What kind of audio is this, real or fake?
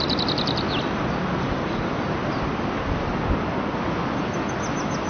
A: real